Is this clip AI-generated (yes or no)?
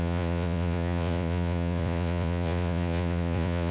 yes